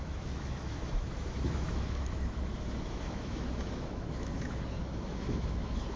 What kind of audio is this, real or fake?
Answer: fake